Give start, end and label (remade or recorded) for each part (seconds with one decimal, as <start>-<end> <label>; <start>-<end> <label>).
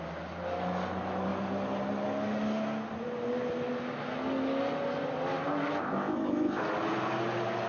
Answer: 0.0-5.8 recorded; 5.8-6.6 remade; 6.6-7.7 recorded